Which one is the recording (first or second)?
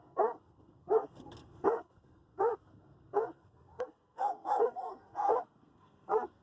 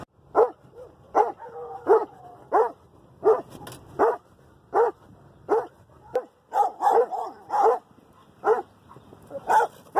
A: second